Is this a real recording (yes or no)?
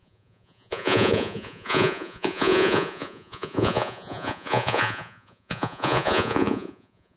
no